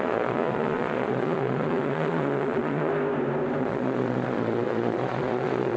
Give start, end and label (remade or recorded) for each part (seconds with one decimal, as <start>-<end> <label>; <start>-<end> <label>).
0.0-2.9 remade; 2.9-3.6 recorded; 3.6-5.8 remade